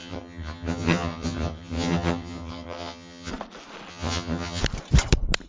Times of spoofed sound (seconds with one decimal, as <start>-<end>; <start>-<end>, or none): 0.0-3.3; 3.9-4.6